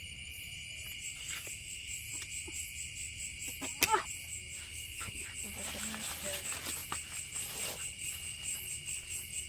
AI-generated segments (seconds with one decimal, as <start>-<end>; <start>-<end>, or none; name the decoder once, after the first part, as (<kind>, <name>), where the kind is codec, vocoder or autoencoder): 1.2-1.9 (codec, SNAC); 4.7-5.3